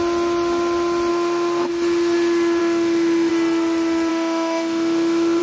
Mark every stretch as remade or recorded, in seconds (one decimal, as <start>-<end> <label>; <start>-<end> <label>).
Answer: 0.0-1.1 recorded; 1.1-1.7 remade; 1.7-2.6 recorded; 2.6-3.3 remade; 3.3-4.1 recorded; 4.1-5.4 remade